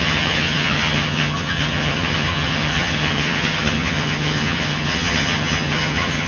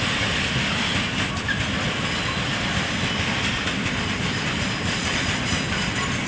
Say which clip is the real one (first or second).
second